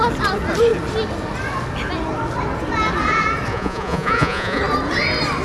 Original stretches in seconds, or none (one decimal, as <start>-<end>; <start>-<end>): 0.0-3.5; 4.6-5.4